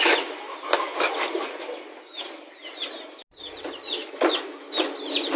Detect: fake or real real